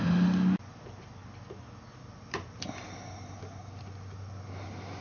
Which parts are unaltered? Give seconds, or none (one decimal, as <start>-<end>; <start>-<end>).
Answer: 0.0-5.0